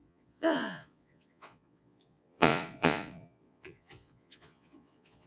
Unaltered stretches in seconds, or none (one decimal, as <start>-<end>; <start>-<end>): none